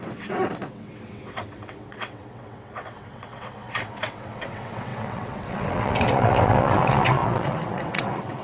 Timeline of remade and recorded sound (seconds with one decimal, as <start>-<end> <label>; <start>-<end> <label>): 0.0-8.4 remade